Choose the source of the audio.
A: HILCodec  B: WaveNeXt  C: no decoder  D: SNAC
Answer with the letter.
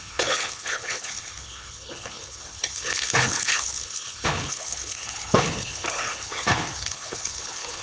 A